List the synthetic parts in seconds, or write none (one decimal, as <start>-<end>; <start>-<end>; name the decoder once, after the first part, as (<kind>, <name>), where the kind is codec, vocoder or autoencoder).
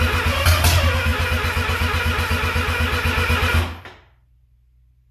none